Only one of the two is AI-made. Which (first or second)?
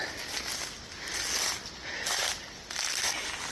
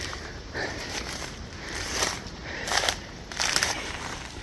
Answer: second